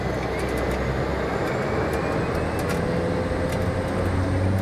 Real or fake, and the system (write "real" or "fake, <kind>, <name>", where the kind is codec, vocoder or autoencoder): real